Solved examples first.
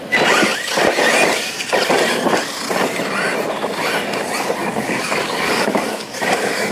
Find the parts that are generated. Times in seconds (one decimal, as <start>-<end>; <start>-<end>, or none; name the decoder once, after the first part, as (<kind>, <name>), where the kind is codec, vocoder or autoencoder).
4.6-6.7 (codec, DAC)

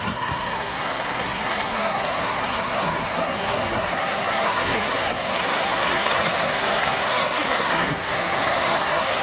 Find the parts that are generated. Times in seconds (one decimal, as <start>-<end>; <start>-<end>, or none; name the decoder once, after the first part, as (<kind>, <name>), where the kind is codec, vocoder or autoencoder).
0.0-9.2 (codec, SNAC)

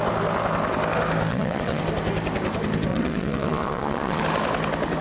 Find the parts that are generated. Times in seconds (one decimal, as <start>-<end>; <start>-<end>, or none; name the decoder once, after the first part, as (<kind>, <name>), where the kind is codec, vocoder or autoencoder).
1.3-1.8 (vocoder, Vocos); 2.9-4.2

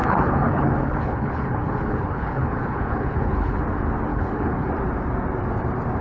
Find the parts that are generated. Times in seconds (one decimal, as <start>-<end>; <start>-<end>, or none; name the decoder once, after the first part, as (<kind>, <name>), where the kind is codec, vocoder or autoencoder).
0.0-3.6 (codec, HILCodec); 4.1-4.7

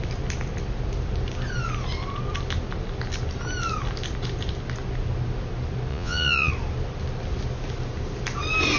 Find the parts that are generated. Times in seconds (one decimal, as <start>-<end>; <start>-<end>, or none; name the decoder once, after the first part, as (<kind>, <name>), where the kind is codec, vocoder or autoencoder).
5.9-6.5 (vocoder, Vocos)

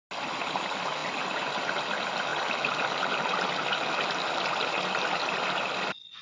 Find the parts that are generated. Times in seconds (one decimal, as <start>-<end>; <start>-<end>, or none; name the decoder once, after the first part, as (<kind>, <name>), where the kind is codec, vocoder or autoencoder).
none